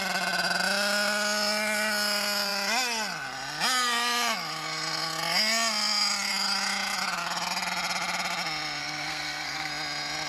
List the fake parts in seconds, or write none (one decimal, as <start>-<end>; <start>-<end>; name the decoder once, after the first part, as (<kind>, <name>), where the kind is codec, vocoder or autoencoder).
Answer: 8.8-9.7 (codec, SNAC)